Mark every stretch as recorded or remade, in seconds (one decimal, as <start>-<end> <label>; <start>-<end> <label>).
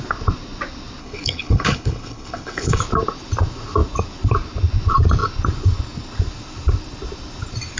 0.0-1.0 recorded; 1.0-2.8 remade; 2.8-7.8 recorded